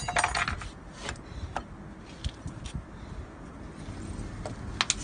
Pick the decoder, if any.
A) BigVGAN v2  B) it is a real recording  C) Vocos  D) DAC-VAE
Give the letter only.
B